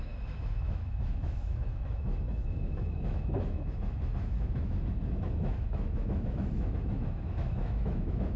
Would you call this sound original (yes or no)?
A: no